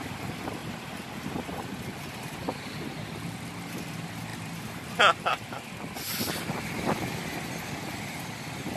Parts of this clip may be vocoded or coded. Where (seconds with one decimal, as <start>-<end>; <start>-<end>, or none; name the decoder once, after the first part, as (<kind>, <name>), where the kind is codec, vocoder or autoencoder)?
0.6-1.8 (vocoder, BigVGAN v2)